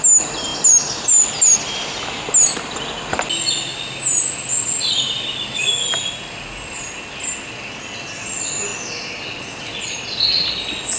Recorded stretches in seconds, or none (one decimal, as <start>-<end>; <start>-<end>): 0.0-11.0

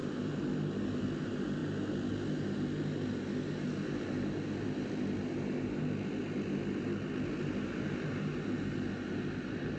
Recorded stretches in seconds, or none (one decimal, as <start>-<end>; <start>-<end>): 0.0-9.8

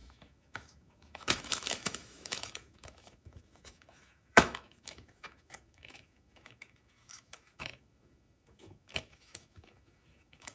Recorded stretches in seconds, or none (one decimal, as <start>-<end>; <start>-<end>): none